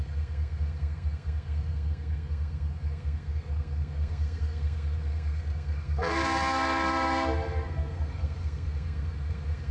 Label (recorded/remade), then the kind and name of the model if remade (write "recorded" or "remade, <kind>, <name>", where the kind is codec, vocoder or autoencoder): remade, codec, SNAC